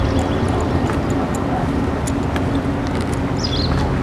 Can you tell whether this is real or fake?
real